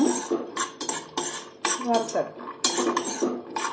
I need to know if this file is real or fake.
real